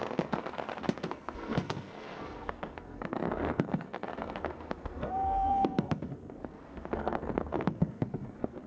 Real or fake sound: fake